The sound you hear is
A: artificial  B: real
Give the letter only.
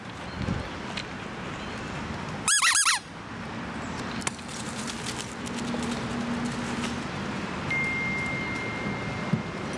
B